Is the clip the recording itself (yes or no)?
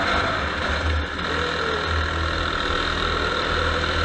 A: yes